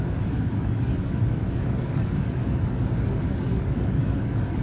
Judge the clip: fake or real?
fake